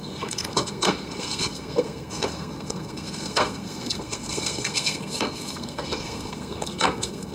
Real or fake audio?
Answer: fake